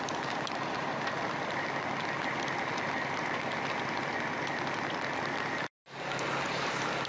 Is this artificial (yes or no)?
no